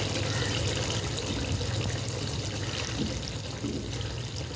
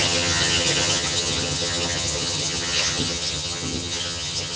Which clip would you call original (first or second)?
first